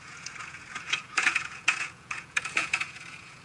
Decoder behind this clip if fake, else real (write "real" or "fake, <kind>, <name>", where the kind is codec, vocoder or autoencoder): fake, vocoder, Vocos